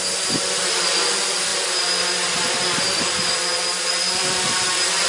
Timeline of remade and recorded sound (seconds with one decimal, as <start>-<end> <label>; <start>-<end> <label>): 0.0-5.1 recorded